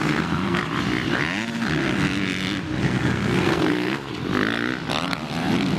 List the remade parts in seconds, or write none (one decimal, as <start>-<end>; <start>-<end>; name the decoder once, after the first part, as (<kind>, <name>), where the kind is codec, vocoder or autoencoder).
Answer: 0.0-0.6 (codec, SNAC); 2.8-4.1